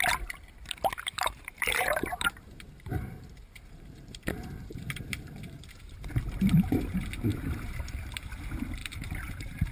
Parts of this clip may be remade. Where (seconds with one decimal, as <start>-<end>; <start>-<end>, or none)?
1.1-6.1; 7.3-8.2; 8.8-9.7